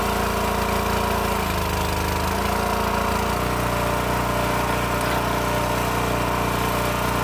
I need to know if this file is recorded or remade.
recorded